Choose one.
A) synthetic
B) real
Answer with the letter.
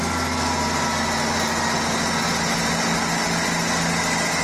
B